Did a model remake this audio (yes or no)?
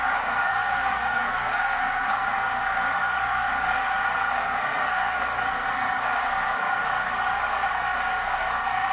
yes